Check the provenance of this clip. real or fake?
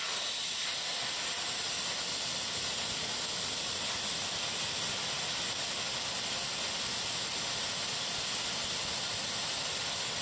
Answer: real